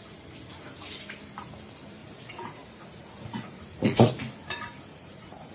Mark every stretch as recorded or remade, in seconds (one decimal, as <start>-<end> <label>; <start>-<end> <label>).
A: 0.0-2.0 recorded; 2.0-4.1 remade; 4.1-4.9 recorded; 4.9-5.5 remade